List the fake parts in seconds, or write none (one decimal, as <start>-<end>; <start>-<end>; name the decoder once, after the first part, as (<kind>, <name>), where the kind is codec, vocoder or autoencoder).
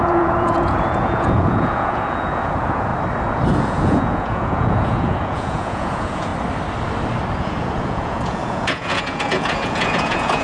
0.0-2.9 (vocoder, Vocos); 3.5-6.3; 7.4-10.4